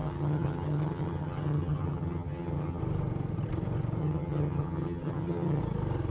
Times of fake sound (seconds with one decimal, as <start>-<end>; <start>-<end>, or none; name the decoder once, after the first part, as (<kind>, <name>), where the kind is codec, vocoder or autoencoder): 0.0-2.8 (vocoder, HiFi-GAN); 4.0-5.6